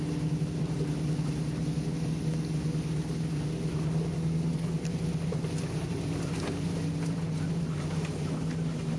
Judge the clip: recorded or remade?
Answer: recorded